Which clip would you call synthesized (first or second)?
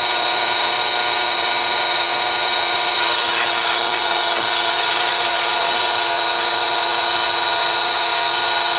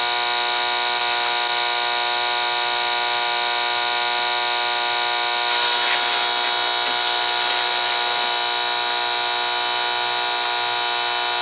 first